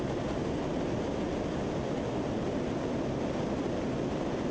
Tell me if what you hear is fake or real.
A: real